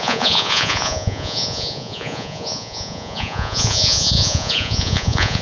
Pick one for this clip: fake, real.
fake